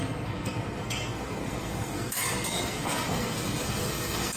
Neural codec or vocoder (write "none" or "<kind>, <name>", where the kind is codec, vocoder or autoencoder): codec, SNAC